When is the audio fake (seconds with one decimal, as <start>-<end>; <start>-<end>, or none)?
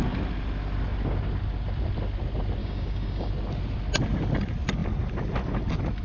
2.6-3.3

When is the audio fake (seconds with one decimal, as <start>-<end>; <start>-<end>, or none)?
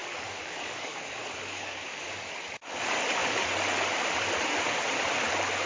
0.0-2.3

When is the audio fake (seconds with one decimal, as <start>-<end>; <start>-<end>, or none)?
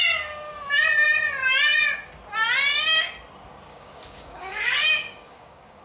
3.7-5.8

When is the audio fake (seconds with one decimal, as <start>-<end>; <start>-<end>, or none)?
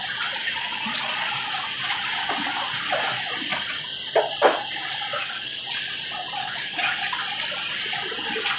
0.4-1.3; 5.1-5.6; 6.4-7.0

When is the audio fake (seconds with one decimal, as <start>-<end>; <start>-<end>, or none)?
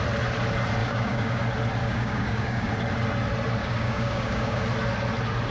0.8-1.4; 1.8-2.7; 3.6-4.6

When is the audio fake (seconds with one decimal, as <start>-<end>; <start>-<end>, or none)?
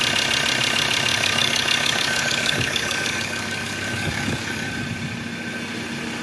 1.1-4.7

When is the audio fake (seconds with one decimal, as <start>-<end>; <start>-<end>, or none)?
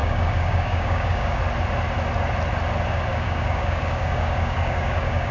0.0-1.4; 3.1-5.3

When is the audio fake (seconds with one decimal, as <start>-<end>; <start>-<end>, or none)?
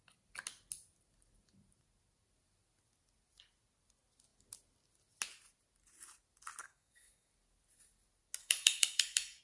6.6-7.3; 8.4-9.4